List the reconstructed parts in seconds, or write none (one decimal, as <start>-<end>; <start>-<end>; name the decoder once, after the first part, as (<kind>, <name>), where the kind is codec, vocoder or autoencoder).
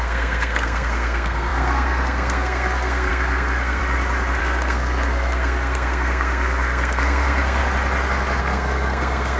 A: 0.0-3.8 (codec, SNAC); 4.4-7.6; 8.4-9.4